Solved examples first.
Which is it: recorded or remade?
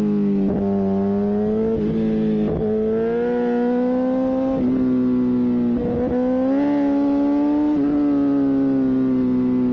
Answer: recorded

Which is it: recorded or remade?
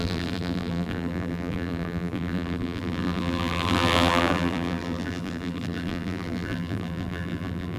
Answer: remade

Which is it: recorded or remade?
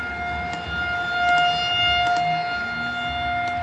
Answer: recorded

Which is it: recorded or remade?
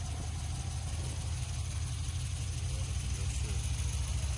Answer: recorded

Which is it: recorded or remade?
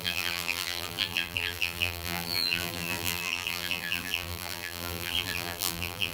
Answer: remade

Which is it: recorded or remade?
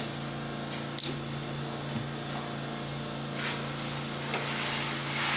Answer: recorded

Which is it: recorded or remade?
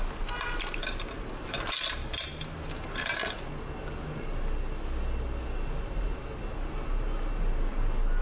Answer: recorded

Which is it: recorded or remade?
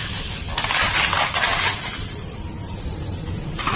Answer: recorded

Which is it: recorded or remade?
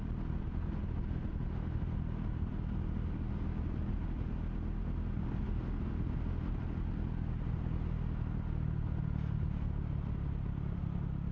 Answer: recorded